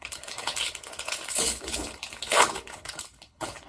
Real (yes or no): no